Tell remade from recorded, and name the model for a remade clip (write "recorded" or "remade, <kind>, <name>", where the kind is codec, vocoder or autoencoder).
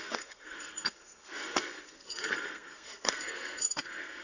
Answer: remade, codec, SNAC